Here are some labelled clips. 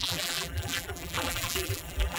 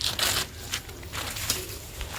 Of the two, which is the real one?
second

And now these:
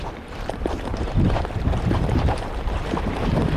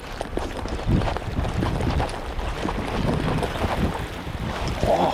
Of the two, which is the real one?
second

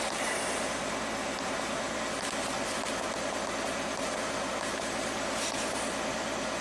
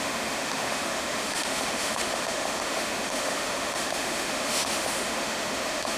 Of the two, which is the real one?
first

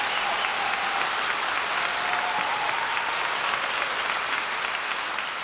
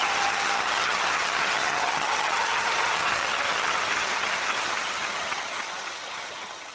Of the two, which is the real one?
first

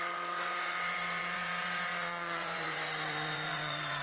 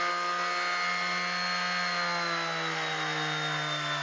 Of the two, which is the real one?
second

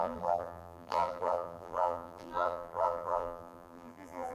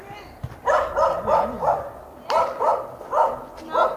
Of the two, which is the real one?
second